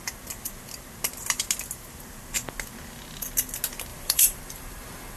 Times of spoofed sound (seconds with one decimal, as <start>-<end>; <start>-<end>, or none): 3.9-5.2